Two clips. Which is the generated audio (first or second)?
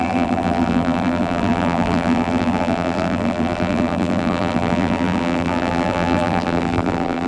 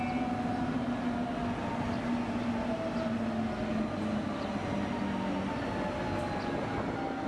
first